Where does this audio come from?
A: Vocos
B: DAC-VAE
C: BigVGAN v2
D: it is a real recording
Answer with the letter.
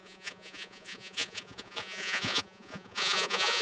A